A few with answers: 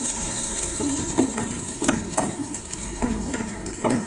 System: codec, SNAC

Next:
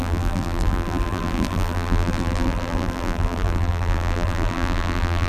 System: vocoder, BigVGAN v2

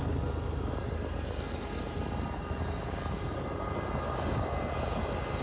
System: none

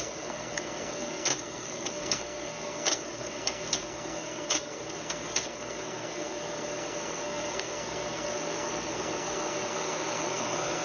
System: codec, SNAC